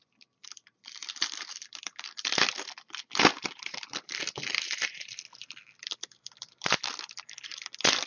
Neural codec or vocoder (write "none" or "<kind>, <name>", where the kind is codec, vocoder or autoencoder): vocoder, BigVGAN v2